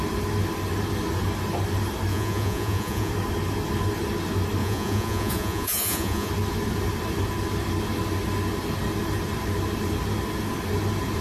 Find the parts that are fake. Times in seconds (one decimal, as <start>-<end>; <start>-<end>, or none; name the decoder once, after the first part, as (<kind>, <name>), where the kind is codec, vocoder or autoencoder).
2.1-3.1 (vocoder, Vocos); 4.6-6.3